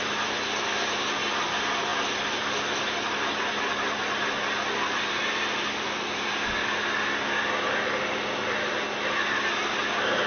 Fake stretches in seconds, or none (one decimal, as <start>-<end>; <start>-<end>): none

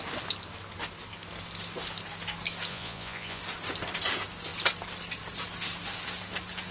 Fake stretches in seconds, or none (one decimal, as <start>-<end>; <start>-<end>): 2.7-3.4